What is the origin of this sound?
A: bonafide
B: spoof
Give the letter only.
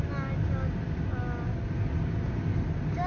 A